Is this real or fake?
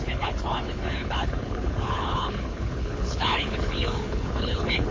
fake